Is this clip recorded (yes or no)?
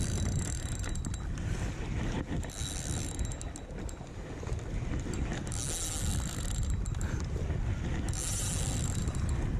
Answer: yes